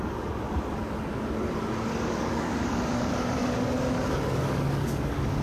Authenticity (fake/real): fake